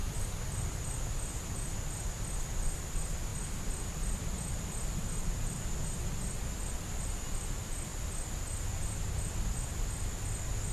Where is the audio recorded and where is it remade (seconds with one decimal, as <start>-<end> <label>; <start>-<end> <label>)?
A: 0.0-0.8 remade; 0.8-10.7 recorded